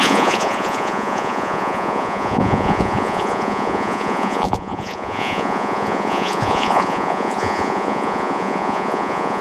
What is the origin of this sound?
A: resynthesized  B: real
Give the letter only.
A